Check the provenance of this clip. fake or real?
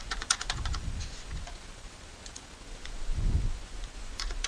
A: fake